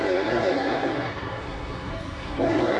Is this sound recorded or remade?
remade